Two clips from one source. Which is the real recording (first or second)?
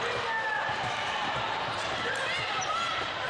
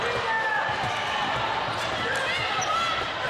second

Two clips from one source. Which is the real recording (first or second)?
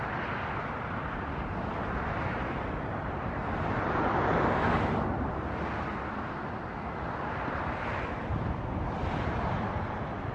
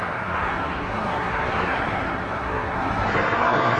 first